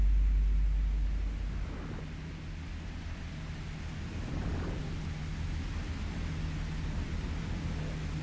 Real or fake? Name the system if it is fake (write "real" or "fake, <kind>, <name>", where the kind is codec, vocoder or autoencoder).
real